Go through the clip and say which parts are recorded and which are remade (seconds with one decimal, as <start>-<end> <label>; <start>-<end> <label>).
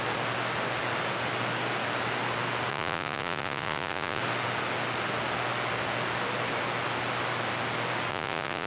0.0-2.7 recorded; 2.7-4.2 remade; 4.2-8.1 recorded; 8.1-8.7 remade